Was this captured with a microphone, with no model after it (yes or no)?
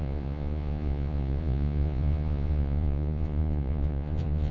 no